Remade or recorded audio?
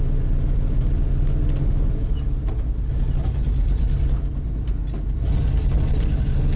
recorded